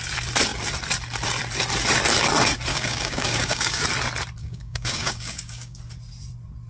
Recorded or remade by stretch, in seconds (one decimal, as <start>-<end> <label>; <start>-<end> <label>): 0.0-2.7 recorded; 2.7-3.8 remade; 3.8-4.4 recorded; 4.4-5.8 remade; 5.8-6.7 recorded